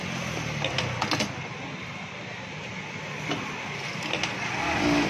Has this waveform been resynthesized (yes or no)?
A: no